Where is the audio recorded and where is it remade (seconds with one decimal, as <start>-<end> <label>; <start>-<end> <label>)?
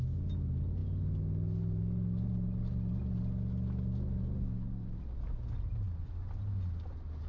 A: 0.0-7.3 recorded